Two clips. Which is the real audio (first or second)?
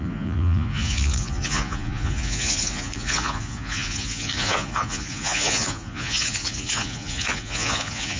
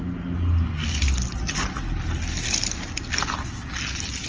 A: second